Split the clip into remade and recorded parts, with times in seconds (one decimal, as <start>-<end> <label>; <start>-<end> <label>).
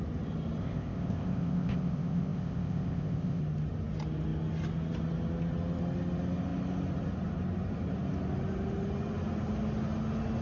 0.0-0.6 recorded; 0.6-3.4 remade; 3.4-10.4 recorded